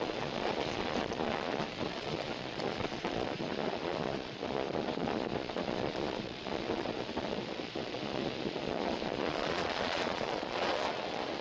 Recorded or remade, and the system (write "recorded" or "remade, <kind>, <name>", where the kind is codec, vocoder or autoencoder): remade, vocoder, Vocos